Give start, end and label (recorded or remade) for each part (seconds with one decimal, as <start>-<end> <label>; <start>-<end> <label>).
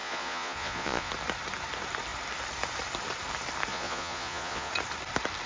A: 0.0-1.1 remade; 1.1-3.7 recorded; 3.7-4.7 remade; 4.7-5.5 recorded